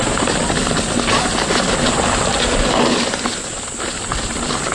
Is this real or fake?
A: real